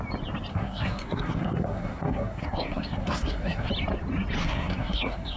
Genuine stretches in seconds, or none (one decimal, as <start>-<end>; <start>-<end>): 0.0-0.5; 3.7-4.4